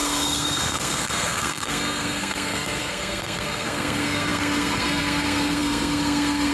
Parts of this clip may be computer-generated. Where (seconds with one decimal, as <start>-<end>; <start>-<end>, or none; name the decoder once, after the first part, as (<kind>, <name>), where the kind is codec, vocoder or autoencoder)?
0.0-6.5 (codec, SNAC)